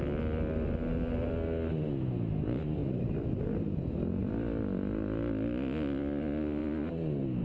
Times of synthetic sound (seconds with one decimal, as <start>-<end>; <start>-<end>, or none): none